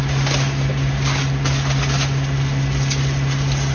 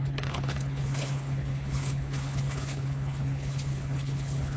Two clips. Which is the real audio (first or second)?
first